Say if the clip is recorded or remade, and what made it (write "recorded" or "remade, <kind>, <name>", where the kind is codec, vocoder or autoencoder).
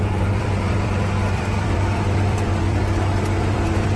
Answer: remade, vocoder, BigVGAN v2